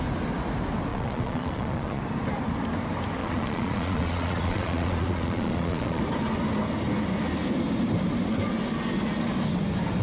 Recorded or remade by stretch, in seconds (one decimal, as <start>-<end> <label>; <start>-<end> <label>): 0.0-0.9 recorded; 0.9-2.0 remade; 2.0-3.2 recorded; 3.2-6.0 remade; 6.0-10.0 recorded